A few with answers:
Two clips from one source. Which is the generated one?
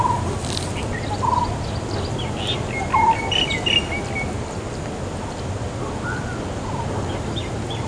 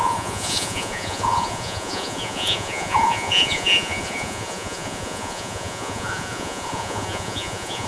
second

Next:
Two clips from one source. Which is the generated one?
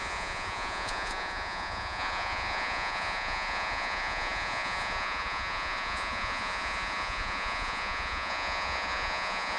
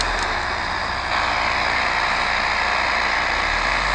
first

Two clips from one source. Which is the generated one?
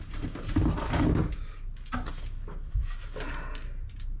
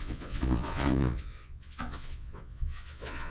second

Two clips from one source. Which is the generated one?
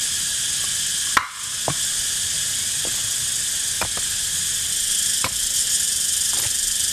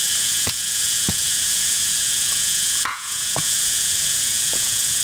second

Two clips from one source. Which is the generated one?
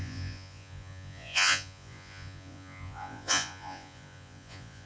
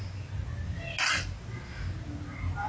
first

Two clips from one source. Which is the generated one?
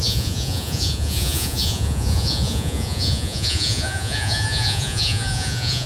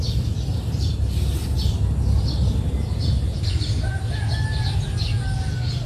first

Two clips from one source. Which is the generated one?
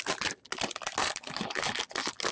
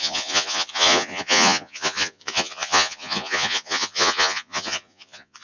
second